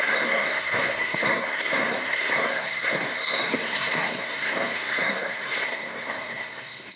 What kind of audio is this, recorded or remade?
remade